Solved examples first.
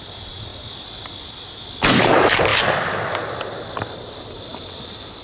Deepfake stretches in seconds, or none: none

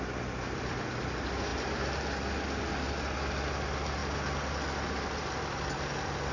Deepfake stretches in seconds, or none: none

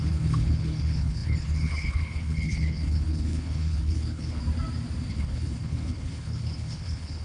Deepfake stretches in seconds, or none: 0.0-4.4 (codec, HILCodec); 5.1-7.2

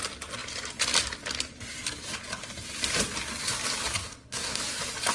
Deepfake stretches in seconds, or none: 4.0-4.6 (codec, SNAC)